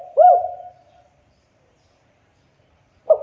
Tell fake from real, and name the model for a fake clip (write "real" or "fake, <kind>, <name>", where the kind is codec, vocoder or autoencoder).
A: fake, vocoder, BigVGAN v2